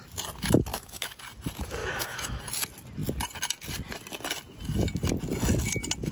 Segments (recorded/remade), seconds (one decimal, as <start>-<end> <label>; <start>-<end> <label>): 0.0-0.7 recorded; 0.7-1.2 remade; 1.2-1.8 recorded; 1.8-2.4 remade; 2.4-6.1 recorded